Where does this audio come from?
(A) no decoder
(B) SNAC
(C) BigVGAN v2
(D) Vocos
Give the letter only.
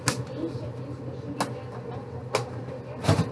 A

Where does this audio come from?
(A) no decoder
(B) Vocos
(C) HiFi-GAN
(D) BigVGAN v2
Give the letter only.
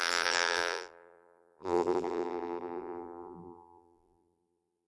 D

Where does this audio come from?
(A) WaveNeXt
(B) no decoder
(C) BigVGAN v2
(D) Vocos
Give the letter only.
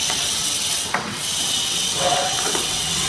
A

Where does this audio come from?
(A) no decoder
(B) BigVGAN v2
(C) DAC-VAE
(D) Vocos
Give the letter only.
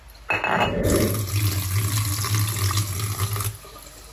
A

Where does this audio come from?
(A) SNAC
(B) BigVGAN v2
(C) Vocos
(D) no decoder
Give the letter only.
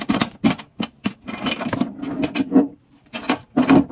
D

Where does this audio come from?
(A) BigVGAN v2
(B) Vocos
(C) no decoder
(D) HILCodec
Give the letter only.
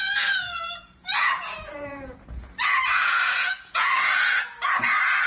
B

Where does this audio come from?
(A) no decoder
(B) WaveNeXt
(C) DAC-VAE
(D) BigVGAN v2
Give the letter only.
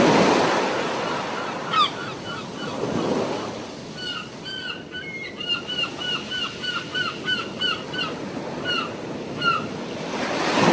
A